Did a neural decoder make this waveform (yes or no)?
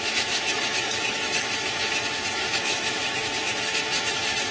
yes